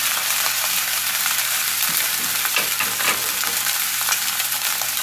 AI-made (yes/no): yes